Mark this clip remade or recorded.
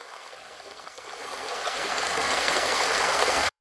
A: remade